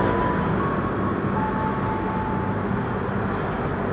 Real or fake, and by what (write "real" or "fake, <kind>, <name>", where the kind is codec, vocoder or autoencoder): real